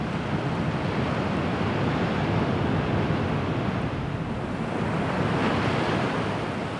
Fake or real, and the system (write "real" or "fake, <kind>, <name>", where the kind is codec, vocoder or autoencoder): real